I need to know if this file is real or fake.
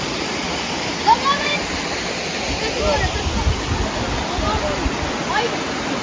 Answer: real